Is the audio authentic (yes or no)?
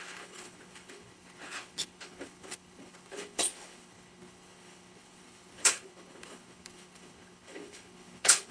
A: no